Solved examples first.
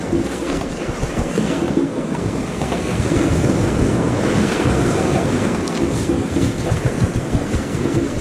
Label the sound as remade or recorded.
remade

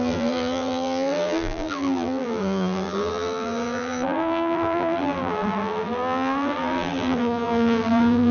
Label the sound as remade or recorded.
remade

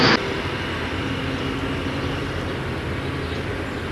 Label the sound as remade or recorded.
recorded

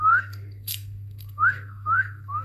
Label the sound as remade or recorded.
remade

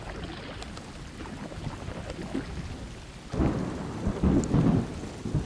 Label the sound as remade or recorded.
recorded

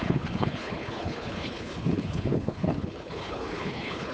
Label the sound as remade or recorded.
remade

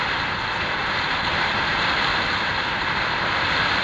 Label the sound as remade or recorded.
recorded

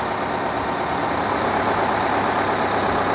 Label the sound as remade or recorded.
recorded